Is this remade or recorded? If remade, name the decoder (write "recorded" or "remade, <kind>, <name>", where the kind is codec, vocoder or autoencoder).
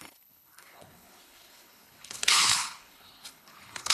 remade, codec, HILCodec